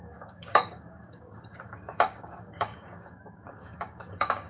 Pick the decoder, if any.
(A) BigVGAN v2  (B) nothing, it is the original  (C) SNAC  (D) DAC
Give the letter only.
D